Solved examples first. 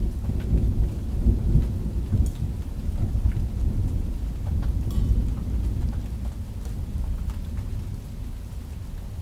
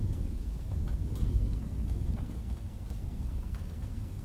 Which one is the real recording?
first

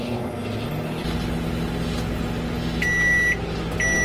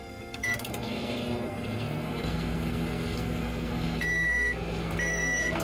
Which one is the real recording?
first